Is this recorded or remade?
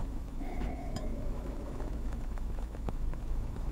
remade